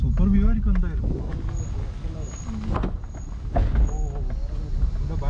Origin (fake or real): real